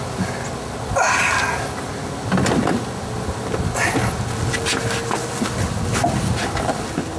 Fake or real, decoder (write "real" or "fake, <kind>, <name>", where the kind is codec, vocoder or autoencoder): real